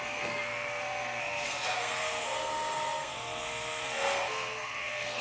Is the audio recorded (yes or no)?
no